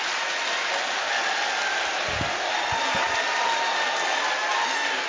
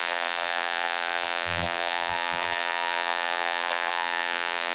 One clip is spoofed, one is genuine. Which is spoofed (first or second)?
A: second